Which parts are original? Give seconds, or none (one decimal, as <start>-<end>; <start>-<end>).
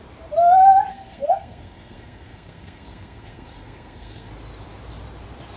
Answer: 0.0-0.9; 4.3-5.6